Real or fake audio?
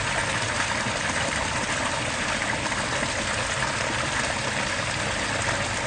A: real